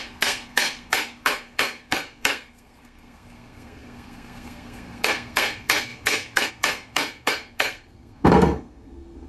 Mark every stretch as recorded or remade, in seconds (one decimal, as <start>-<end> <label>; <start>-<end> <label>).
0.0-9.3 remade